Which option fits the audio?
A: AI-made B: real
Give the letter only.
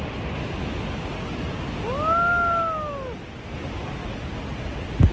B